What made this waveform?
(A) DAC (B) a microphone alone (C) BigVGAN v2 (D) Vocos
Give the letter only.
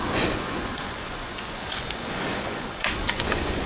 D